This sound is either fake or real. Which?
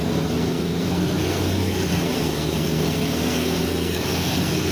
fake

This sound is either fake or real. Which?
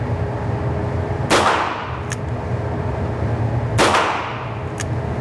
real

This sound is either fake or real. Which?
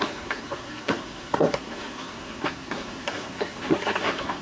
fake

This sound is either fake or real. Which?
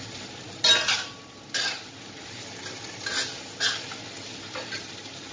real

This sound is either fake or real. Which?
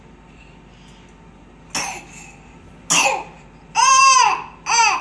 real